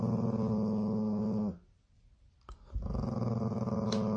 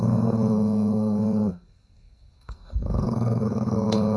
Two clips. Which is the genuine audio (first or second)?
first